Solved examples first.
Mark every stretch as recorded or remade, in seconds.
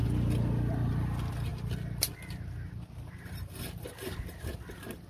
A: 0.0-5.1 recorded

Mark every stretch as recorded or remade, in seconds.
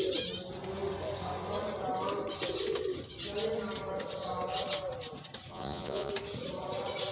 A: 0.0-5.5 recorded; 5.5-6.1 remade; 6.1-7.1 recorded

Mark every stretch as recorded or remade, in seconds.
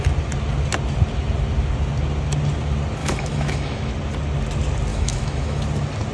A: 0.0-3.0 recorded; 3.0-3.9 remade; 3.9-4.9 recorded; 4.9-5.6 remade; 5.6-6.1 recorded